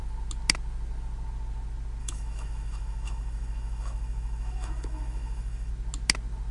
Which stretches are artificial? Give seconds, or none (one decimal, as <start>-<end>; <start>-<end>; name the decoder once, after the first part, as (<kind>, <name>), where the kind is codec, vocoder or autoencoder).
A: 2.0-5.7 (autoencoder, DAC-VAE)